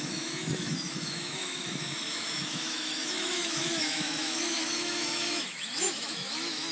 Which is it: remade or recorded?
remade